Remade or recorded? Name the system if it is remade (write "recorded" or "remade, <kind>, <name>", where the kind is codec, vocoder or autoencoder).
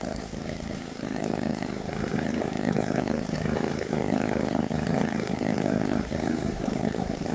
remade, codec, SNAC